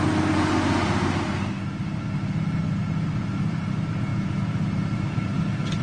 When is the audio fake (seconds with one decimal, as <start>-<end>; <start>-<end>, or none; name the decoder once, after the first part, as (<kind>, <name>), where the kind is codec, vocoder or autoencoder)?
none